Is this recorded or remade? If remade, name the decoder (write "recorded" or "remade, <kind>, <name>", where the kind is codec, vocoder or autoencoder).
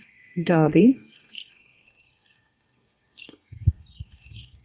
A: remade, codec, SNAC